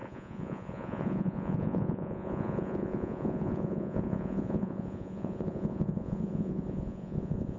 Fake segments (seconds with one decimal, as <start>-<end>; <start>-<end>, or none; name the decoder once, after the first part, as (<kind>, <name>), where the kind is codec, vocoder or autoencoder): 0.0-7.6 (vocoder, Vocos)